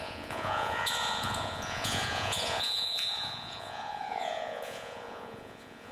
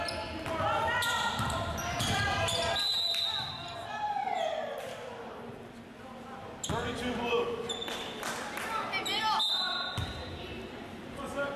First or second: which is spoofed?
first